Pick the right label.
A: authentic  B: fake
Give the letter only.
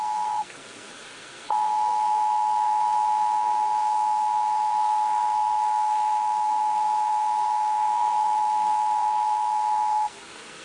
B